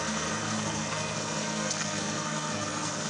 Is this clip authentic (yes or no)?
no